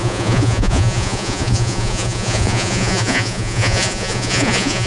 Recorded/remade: remade